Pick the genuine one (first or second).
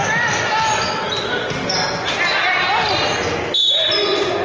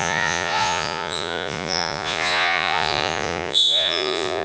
first